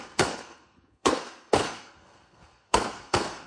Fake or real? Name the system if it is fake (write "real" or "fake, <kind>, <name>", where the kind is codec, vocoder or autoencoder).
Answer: fake, codec, SNAC